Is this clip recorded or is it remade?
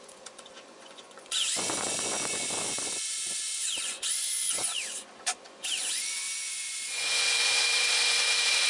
remade